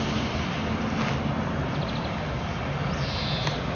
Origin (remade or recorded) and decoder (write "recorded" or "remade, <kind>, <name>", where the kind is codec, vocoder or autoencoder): recorded